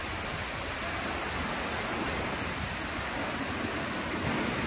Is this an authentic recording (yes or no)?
yes